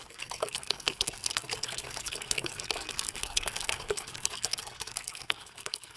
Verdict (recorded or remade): remade